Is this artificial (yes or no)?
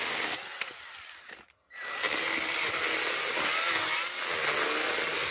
no